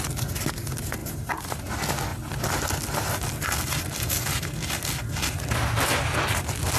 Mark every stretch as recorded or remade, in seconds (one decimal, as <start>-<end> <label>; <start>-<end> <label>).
0.0-1.0 recorded; 1.0-1.7 remade; 1.7-6.8 recorded